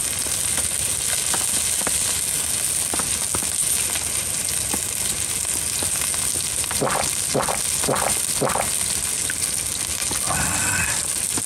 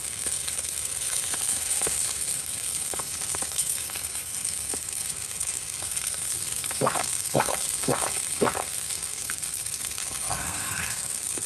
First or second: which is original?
first